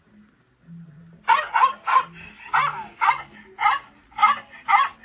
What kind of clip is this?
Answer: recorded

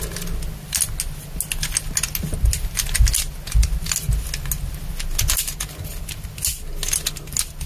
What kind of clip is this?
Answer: recorded